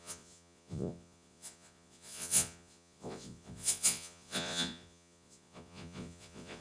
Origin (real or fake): fake